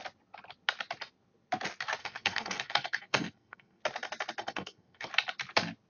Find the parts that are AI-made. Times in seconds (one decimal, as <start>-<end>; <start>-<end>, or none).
2.0-3.8; 4.4-5.1